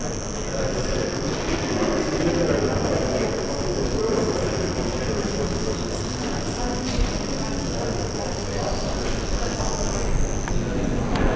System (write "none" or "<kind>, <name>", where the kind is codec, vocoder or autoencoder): none